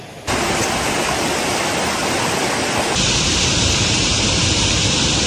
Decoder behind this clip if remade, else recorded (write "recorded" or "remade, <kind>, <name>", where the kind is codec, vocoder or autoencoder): recorded